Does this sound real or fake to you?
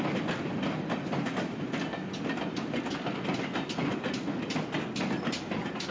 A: real